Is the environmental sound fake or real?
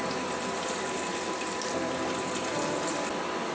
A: real